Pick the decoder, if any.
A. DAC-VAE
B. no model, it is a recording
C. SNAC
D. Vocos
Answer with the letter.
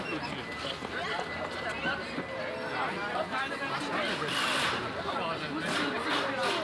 B